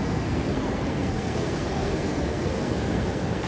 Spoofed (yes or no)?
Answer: yes